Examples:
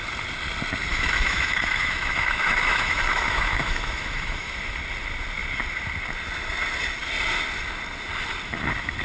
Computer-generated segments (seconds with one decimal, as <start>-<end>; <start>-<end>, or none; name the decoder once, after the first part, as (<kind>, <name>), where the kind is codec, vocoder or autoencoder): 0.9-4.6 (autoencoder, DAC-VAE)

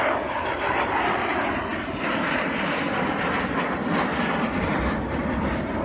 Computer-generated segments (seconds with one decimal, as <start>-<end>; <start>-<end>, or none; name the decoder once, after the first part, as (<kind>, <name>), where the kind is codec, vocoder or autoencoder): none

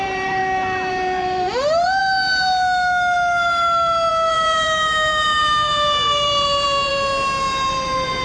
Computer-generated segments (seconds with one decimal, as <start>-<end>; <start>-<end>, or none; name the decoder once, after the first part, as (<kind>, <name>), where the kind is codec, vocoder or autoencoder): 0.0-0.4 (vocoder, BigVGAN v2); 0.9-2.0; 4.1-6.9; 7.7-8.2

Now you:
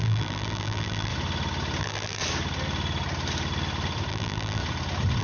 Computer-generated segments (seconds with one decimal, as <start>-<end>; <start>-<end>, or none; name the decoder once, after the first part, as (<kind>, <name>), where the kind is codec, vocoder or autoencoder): 0.0-1.1 (vocoder, BigVGAN v2); 1.8-2.2; 4.1-4.6